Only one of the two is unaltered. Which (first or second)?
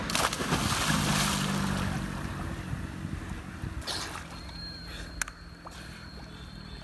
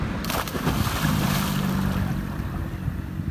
first